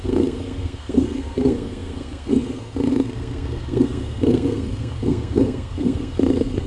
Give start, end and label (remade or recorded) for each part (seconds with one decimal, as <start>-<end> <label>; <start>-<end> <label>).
0.0-6.7 remade